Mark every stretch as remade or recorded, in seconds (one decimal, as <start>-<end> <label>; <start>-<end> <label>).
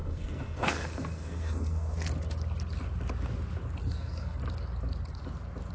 0.0-2.0 remade; 2.0-3.8 recorded; 3.8-4.4 remade; 4.4-5.7 recorded